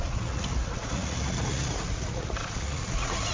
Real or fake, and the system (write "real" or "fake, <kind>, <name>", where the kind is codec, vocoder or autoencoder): fake, vocoder, Vocos